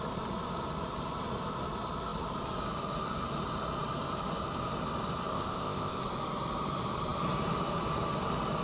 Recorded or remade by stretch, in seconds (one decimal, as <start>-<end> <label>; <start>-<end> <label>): 0.0-5.3 recorded; 5.3-6.0 remade; 6.0-8.6 recorded